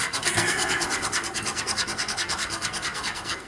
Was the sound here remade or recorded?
remade